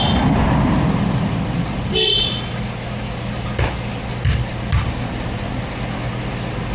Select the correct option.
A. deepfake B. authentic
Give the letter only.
B